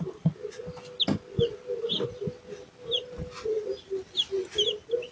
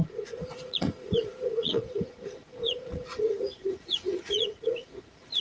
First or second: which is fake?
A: second